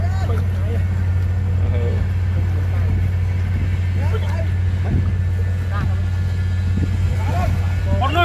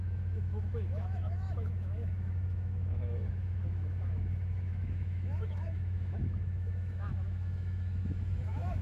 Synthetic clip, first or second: second